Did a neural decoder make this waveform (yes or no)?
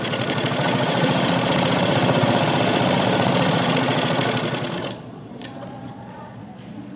yes